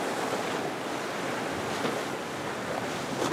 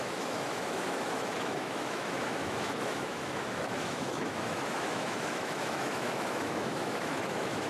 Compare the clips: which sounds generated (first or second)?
second